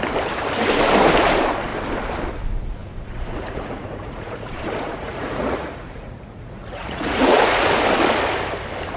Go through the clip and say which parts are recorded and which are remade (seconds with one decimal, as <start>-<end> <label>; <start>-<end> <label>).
0.0-2.8 recorded; 2.8-7.6 remade; 7.6-9.0 recorded

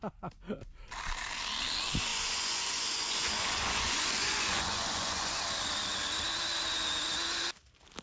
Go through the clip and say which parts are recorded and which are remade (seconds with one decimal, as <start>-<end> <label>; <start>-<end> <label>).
0.0-2.1 recorded; 2.1-5.4 remade; 5.4-8.0 recorded

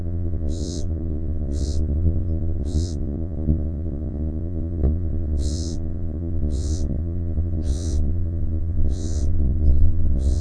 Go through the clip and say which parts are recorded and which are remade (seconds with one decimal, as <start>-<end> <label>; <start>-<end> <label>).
0.0-10.4 remade

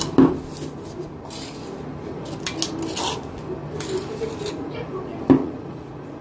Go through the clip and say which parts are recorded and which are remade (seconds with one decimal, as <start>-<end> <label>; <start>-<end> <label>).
0.0-4.5 recorded; 4.5-5.0 remade; 5.0-5.4 recorded; 5.4-6.2 remade

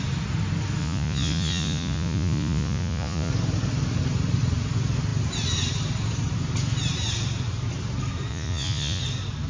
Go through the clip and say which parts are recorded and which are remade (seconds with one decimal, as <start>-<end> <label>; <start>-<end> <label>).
0.0-0.8 recorded; 0.8-3.3 remade; 3.3-8.3 recorded; 8.3-9.0 remade; 9.0-9.5 recorded

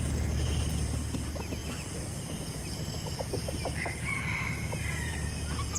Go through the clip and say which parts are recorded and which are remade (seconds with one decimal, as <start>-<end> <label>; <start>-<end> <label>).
0.0-5.8 recorded

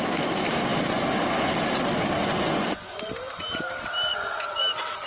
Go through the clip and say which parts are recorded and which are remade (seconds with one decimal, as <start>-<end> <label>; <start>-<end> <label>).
0.0-2.2 recorded; 2.2-3.1 remade; 3.1-4.1 recorded; 4.1-4.6 remade; 4.6-5.1 recorded

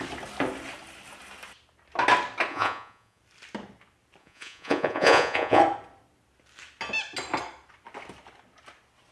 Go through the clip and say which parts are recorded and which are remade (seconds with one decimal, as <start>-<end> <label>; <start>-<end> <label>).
0.0-2.5 recorded; 2.5-3.2 remade; 3.2-4.2 recorded; 4.2-5.6 remade; 5.6-9.1 recorded